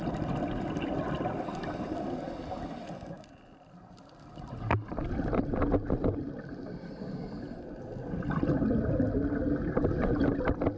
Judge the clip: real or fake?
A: real